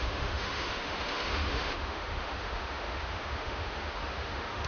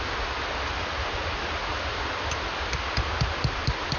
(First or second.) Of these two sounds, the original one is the second